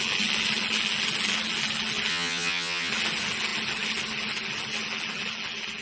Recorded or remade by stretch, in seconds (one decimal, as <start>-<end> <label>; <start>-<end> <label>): 0.0-2.1 recorded; 2.1-2.9 remade; 2.9-5.8 recorded